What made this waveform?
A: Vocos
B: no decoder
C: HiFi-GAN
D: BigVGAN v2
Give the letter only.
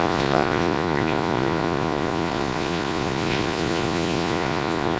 A